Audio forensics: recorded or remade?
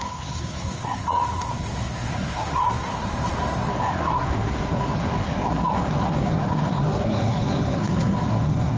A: remade